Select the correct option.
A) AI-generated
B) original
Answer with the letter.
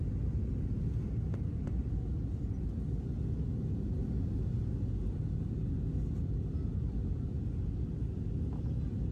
B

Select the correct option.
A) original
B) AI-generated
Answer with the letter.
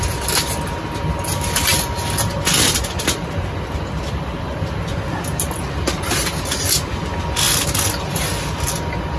A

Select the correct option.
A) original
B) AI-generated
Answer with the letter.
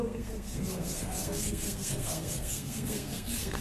B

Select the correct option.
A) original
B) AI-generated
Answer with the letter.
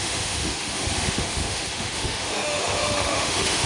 B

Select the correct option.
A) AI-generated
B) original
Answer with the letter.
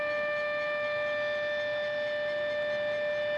B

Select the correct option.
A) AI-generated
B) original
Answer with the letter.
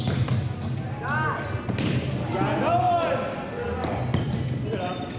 B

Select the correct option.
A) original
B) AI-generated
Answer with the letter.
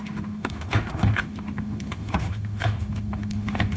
B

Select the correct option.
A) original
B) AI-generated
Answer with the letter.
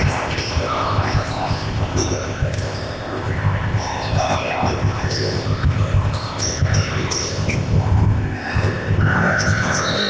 B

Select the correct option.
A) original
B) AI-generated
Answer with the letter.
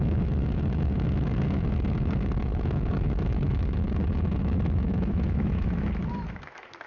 B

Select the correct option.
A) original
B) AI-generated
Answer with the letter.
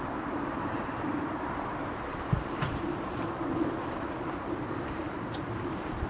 B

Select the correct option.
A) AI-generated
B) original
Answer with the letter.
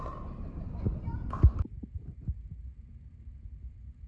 A